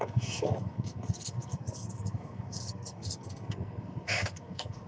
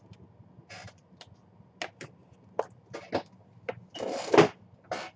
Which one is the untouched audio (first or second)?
second